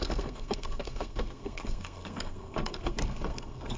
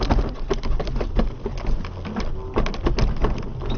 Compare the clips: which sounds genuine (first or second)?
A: second